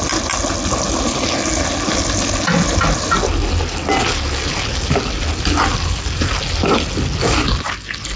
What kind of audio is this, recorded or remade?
recorded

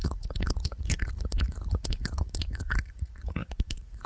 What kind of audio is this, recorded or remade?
remade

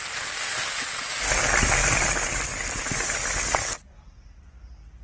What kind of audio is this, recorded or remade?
recorded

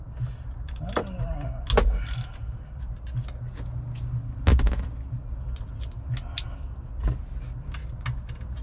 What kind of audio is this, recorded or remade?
recorded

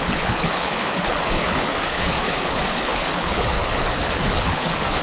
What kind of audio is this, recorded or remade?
remade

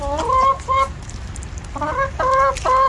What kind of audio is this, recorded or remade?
recorded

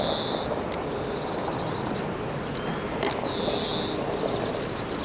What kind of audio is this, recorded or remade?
recorded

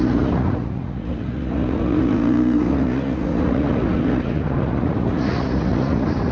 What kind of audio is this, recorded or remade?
remade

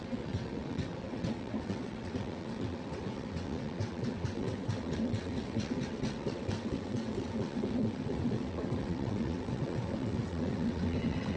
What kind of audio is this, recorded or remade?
remade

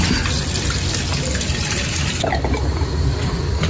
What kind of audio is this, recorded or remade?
recorded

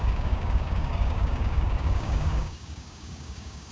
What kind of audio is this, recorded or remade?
remade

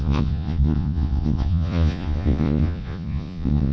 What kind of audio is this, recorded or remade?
remade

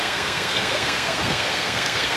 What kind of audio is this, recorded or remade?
remade